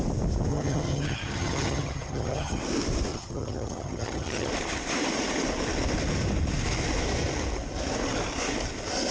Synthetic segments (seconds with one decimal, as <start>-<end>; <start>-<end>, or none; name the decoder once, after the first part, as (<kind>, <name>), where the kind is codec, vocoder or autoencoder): 0.5-2.6 (vocoder, HiFi-GAN); 3.1-4.5